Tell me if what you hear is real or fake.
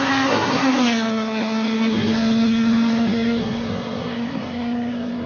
fake